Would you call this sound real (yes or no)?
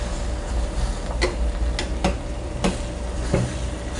yes